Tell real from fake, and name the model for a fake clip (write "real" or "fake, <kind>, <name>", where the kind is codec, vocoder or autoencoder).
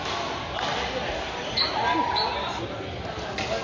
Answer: real